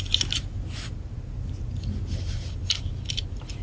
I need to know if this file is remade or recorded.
recorded